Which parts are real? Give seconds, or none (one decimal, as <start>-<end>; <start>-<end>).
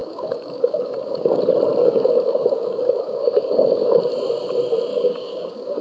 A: 1.4-1.8; 4.0-4.9